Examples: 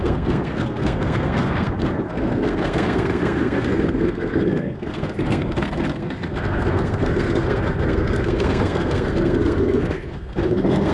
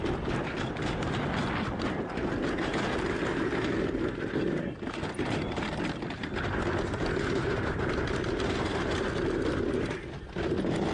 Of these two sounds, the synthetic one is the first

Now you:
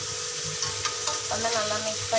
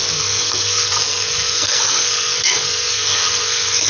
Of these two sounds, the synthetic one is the second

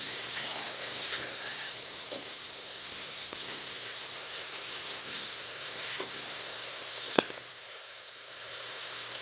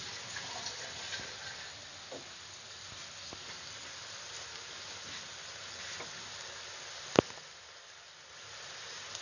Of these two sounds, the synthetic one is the first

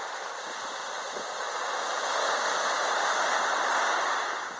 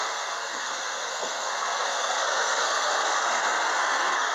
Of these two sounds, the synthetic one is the second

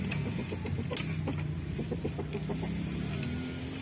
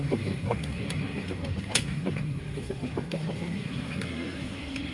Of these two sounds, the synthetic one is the second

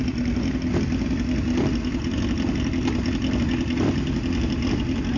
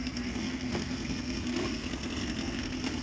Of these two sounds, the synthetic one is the second